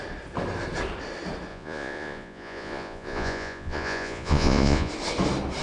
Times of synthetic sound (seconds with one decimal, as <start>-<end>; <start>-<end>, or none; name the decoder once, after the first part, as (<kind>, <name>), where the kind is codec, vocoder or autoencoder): 1.5-4.9 (vocoder, Vocos)